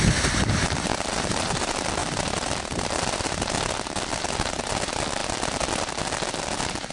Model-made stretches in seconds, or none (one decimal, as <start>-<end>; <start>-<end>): 0.9-1.6; 2.0-3.4